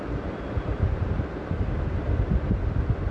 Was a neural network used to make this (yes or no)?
no